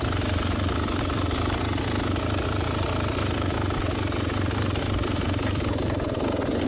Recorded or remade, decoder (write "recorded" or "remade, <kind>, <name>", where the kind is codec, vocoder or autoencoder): recorded